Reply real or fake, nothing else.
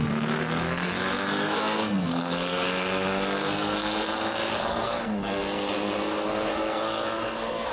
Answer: fake